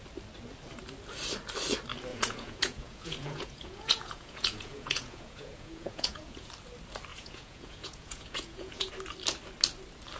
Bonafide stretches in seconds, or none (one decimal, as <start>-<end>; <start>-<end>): 0.0-2.1; 6.5-7.1; 8.9-10.2